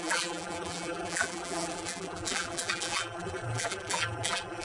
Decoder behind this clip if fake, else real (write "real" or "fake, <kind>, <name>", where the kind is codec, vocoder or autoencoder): fake, vocoder, BigVGAN v2